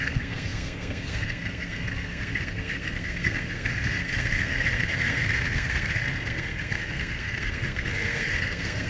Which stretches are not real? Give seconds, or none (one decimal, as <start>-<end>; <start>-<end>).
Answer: 0.0-8.9